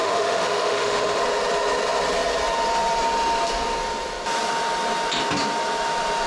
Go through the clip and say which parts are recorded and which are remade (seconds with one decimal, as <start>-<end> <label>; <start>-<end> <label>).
0.0-1.2 remade; 1.2-6.3 recorded